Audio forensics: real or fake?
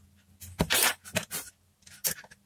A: real